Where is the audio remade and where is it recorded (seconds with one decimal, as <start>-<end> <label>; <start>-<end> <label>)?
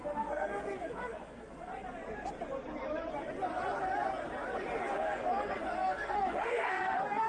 0.0-1.7 remade; 1.7-4.8 recorded; 4.8-7.3 remade